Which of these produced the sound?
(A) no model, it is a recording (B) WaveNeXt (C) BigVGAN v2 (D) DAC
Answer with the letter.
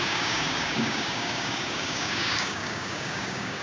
D